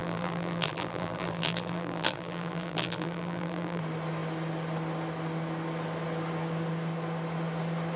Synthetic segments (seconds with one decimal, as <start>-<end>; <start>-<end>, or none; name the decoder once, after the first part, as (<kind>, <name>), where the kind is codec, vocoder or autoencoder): 0.0-3.8 (vocoder, BigVGAN v2)